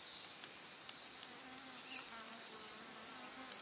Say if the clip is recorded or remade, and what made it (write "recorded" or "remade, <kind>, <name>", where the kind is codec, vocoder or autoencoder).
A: recorded